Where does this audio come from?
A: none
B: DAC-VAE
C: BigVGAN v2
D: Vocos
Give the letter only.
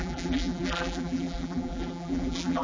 C